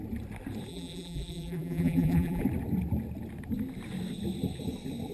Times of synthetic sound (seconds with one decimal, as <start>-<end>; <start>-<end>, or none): 0.7-2.4